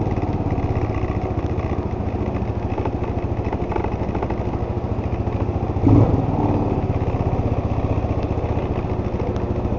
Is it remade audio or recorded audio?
recorded